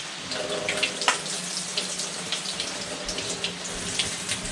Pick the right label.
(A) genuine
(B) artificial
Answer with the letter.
A